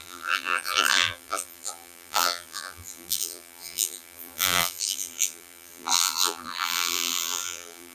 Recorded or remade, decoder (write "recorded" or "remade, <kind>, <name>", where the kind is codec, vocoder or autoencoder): remade, vocoder, BigVGAN v2